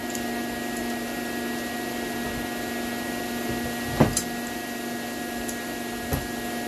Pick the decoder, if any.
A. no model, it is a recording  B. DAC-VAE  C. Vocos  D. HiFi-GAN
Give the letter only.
A